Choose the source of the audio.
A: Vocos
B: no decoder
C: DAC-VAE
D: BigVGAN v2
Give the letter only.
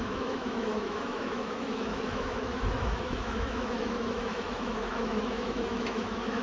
C